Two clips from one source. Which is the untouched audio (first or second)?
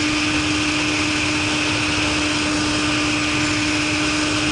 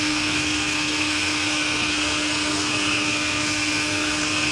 first